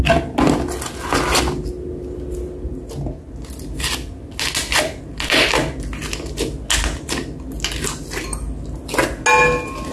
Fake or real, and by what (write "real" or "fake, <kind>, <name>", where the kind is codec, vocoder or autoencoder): real